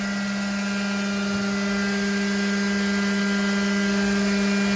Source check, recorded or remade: recorded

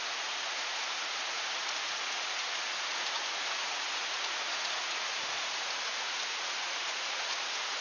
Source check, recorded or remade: remade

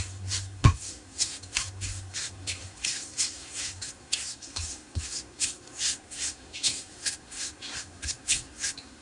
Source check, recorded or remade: remade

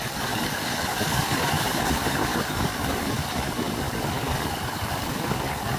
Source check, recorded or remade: remade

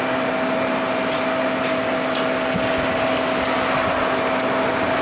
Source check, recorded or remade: recorded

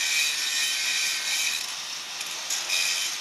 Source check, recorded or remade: recorded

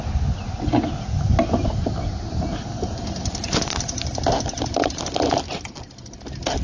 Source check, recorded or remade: recorded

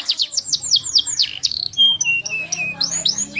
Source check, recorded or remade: remade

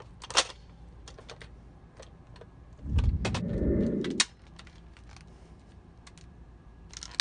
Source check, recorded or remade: recorded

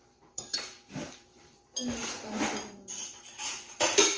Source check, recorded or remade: remade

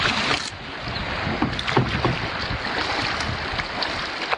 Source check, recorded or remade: recorded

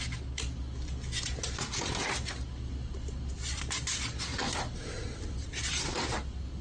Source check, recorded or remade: recorded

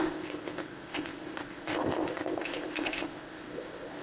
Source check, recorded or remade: remade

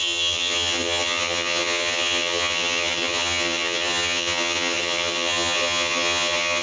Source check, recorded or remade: remade